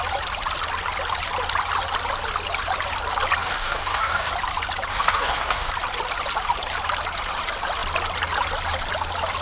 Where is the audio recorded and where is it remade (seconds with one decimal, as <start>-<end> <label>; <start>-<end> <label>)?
0.0-3.4 recorded; 3.4-4.3 remade; 4.3-4.9 recorded; 4.9-5.7 remade; 5.7-9.4 recorded